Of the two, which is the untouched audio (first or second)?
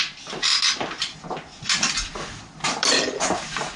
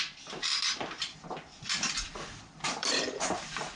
first